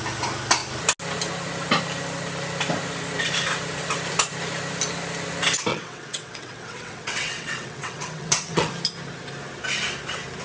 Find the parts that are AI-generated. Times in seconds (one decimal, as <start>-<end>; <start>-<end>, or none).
5.7-8.7